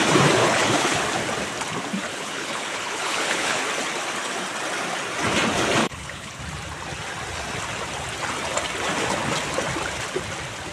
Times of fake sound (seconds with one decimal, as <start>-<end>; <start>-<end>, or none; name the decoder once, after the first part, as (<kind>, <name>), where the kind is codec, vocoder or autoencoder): 0.4-1.0 (codec, HILCodec); 2.1-3.6; 5.8-6.4